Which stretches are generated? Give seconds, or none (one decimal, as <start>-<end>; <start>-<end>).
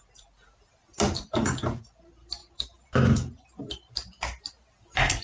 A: none